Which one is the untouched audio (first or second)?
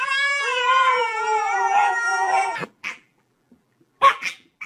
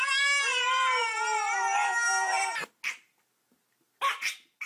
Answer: second